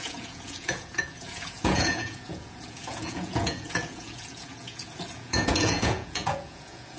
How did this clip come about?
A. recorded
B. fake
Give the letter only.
B